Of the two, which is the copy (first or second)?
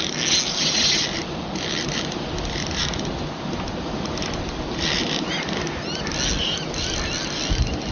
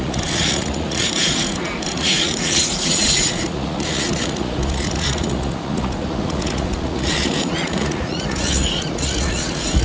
second